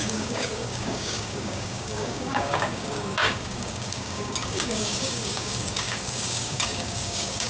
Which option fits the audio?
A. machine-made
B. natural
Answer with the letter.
A